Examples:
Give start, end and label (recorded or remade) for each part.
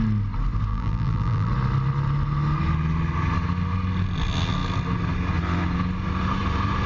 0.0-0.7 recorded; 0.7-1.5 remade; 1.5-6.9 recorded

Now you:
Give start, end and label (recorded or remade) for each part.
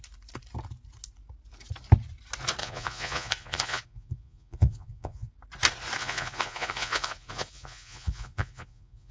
0.0-2.6 recorded; 2.6-5.3 remade; 5.3-6.0 recorded; 6.0-9.1 remade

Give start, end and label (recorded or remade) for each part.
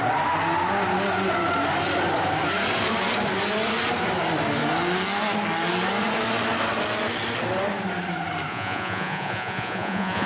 0.0-8.5 recorded; 8.5-10.3 remade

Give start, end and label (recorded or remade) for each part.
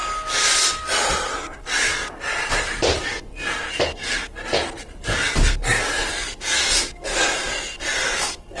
0.0-0.7 recorded; 0.7-3.0 remade; 3.0-7.8 recorded; 7.8-8.6 remade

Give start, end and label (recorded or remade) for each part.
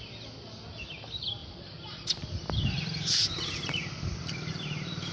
0.0-1.4 recorded; 1.4-4.5 remade; 4.5-5.1 recorded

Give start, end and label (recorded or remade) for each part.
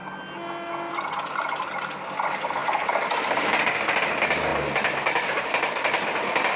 0.0-6.6 recorded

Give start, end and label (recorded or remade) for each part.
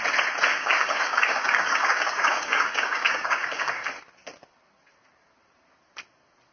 0.0-0.5 recorded; 0.5-3.9 remade; 3.9-6.5 recorded